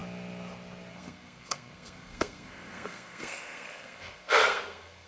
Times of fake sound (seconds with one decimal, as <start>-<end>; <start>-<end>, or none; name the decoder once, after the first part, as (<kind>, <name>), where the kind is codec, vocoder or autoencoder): 0.9-5.1 (codec, SNAC)